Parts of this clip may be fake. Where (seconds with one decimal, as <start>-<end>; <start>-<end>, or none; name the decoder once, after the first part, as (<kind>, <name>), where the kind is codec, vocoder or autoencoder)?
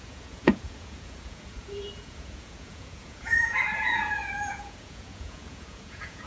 0.0-6.3 (vocoder, Vocos)